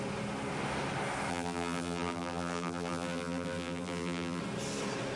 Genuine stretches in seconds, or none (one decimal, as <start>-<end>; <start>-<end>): 0.0-1.3; 4.4-5.2